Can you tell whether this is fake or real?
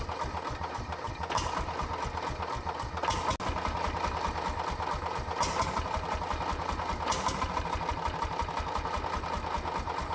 real